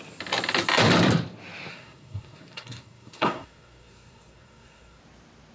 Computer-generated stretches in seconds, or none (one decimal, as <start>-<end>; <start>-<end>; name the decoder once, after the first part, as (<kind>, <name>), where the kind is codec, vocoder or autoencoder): 1.7-5.0 (codec, SNAC)